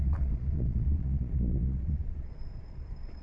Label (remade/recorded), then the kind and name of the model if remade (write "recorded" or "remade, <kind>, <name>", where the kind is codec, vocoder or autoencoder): remade, vocoder, Vocos